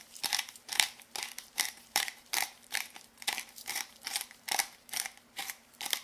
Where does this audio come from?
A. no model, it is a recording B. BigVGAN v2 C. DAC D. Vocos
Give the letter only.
B